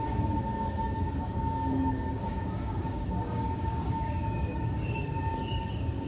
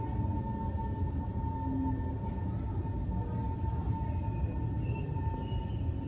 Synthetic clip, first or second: first